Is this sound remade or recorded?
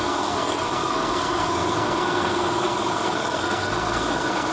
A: remade